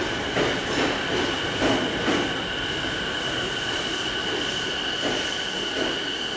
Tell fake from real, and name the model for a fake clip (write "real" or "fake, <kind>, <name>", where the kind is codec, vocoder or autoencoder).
real